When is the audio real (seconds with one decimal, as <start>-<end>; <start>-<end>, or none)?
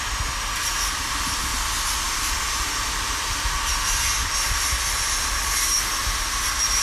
0.0-1.5; 5.6-6.8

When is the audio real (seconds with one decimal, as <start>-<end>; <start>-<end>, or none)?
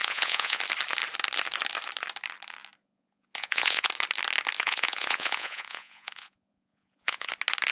0.6-2.8; 3.9-4.6; 7.3-7.7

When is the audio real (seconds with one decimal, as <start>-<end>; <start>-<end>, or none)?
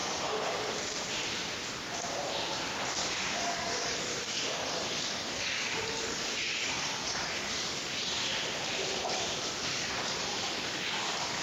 0.7-3.0; 8.2-9.7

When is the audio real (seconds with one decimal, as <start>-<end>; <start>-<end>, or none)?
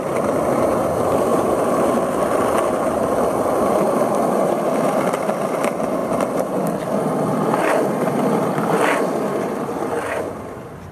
6.0-6.8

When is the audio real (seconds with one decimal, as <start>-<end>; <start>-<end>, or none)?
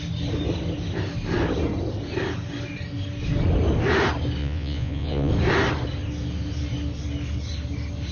0.0-4.4; 5.3-8.1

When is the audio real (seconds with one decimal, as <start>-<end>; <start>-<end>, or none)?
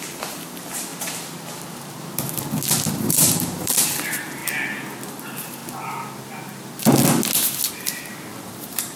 0.9-2.9; 4.4-5.1; 5.6-7.7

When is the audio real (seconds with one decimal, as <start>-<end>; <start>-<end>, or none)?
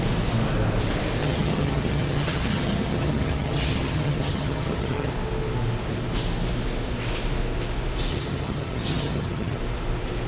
0.0-1.2; 5.1-8.1; 9.6-10.3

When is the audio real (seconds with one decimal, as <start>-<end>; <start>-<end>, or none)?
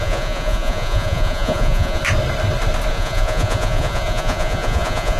2.0-2.9